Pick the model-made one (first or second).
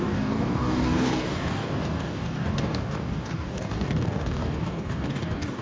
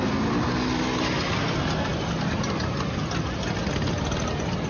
first